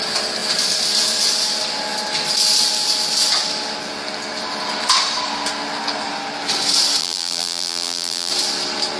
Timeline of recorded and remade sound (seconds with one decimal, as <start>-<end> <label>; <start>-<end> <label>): 0.0-7.0 recorded; 7.0-8.3 remade; 8.3-9.0 recorded